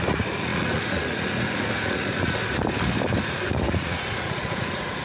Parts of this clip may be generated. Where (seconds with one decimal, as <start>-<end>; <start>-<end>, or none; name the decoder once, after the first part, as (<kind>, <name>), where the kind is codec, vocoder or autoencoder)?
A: 0.0-2.4 (vocoder, Vocos); 3.2-5.0

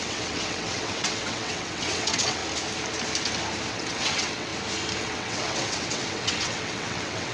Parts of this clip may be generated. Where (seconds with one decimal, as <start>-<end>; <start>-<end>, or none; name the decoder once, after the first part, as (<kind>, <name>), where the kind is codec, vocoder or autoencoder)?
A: 0.0-2.4 (vocoder, WaveNeXt); 3.7-4.5; 5.0-7.3

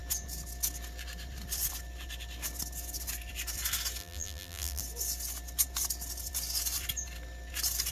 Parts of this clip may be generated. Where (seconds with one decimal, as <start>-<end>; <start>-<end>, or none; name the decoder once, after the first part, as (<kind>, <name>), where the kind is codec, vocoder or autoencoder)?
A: 4.0-4.8 (vocoder, BigVGAN v2)

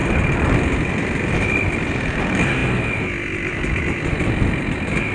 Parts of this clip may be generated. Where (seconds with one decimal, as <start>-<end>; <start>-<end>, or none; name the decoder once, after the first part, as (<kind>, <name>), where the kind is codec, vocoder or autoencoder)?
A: 0.0-2.2 (vocoder, BigVGAN v2)

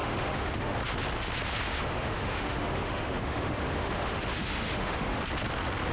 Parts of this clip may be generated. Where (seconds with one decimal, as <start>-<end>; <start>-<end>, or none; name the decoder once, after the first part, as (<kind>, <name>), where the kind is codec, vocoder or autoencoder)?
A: 0.0-0.8 (autoencoder, DAC-VAE); 1.7-5.2

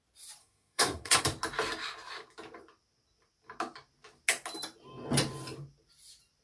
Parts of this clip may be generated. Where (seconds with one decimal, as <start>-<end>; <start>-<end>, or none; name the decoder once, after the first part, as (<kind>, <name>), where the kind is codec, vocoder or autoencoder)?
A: 0.4-1.2 (codec, SNAC)

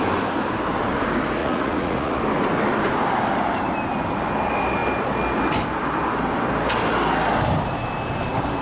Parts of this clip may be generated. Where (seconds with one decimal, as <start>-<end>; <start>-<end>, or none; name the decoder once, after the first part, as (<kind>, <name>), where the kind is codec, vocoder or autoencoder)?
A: 1.4-2.2 (vocoder, Vocos)

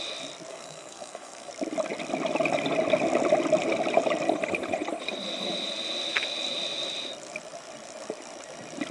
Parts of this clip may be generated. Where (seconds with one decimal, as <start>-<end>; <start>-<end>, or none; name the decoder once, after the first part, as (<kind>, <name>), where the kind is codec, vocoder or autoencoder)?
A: 0.5-1.5 (codec, SNAC)